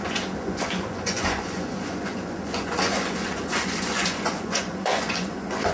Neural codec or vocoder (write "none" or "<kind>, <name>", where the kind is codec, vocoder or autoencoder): vocoder, Vocos